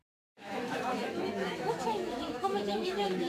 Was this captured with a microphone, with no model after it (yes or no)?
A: no